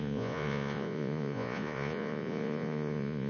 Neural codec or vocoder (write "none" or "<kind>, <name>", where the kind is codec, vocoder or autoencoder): vocoder, Vocos